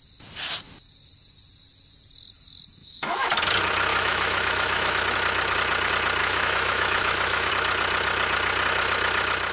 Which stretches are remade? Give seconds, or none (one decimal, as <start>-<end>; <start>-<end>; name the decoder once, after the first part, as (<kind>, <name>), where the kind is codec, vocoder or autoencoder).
2.8-3.3 (autoencoder, DAC-VAE); 3.9-5.0; 6.2-7.5